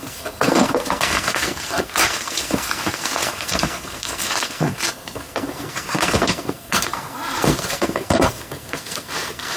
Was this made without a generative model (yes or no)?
no